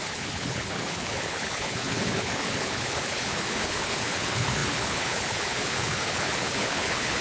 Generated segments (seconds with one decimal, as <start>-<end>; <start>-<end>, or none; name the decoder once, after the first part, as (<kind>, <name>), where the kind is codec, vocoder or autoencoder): 0.0-7.2 (codec, HILCodec)